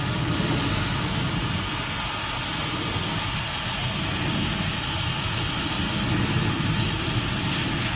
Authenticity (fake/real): real